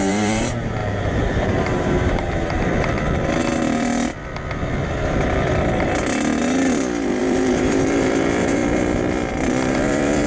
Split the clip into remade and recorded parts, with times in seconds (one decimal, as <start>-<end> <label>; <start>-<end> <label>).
0.0-2.7 remade; 2.7-7.2 recorded; 7.2-8.6 remade; 8.6-9.7 recorded; 9.7-10.3 remade